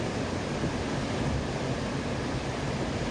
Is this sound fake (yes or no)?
no